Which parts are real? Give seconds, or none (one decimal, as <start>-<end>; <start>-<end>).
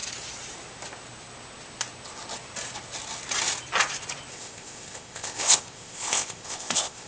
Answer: 0.0-4.3